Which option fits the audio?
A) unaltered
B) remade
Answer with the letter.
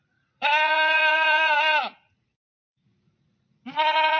B